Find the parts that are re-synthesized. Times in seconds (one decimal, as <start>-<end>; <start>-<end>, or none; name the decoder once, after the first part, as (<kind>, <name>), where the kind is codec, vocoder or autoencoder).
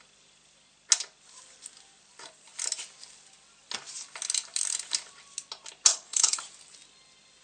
5.9-6.4 (codec, HILCodec)